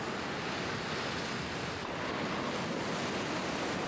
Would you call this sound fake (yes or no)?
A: no